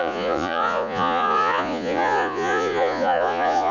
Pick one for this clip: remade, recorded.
remade